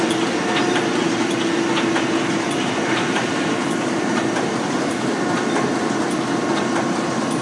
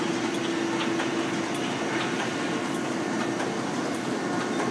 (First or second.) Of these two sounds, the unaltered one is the second